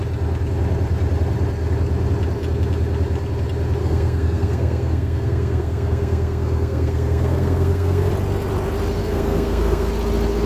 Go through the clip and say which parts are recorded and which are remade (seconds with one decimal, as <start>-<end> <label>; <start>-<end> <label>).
0.0-3.8 recorded; 3.8-8.1 remade; 8.1-9.0 recorded; 9.0-9.9 remade; 9.9-10.5 recorded